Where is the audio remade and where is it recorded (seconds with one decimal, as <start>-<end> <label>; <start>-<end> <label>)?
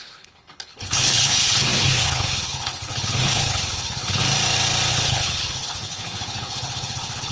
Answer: 0.0-4.2 remade; 4.2-4.9 recorded; 4.9-7.3 remade